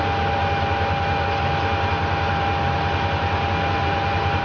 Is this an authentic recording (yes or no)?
yes